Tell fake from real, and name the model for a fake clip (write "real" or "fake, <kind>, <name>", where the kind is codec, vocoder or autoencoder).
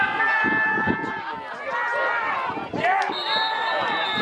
real